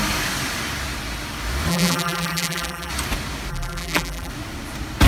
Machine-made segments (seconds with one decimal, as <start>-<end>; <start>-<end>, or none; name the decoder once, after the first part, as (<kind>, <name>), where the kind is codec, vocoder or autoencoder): 1.7-2.9 (vocoder, BigVGAN v2); 3.5-4.3